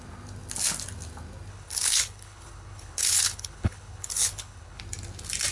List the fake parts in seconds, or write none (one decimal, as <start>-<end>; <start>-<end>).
1.5-4.8